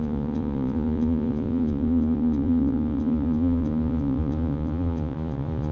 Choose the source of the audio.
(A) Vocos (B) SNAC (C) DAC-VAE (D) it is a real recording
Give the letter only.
A